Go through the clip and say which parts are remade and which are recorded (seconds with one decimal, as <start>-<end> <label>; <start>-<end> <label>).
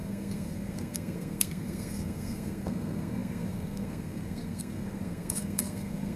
0.0-6.2 remade